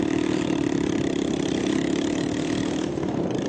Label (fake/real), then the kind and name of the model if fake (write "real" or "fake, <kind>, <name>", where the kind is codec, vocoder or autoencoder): fake, vocoder, BigVGAN v2